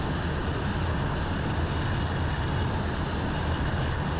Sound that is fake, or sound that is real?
real